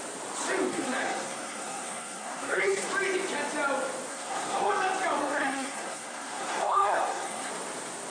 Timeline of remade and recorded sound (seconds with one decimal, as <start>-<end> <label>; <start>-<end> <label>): 0.0-0.7 recorded; 0.7-2.9 remade; 2.9-4.1 recorded; 4.1-4.7 remade; 4.7-5.2 recorded; 5.2-7.5 remade; 7.5-8.1 recorded

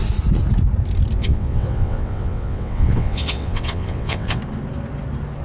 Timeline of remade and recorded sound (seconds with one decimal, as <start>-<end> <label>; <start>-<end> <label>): 0.0-1.2 recorded; 1.2-4.4 remade; 4.4-5.4 recorded